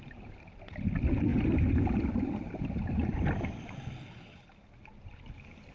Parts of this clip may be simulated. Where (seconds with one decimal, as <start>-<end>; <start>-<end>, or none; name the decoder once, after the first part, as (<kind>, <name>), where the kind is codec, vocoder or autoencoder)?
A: 1.3-2.0 (vocoder, BigVGAN v2)